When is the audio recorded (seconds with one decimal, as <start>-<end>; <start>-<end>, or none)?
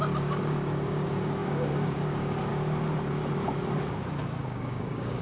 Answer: 2.5-4.4